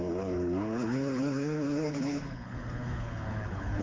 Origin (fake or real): fake